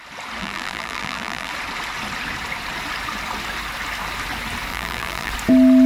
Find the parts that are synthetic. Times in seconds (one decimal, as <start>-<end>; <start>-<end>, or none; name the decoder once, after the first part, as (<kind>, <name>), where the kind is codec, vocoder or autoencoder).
0.4-1.5 (vocoder, BigVGAN v2); 4.7-5.3